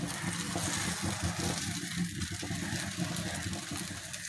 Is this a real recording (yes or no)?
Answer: yes